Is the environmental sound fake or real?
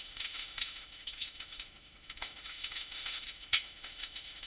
fake